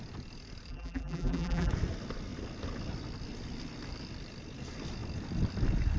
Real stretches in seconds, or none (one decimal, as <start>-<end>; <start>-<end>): 0.0-0.7; 1.7-6.0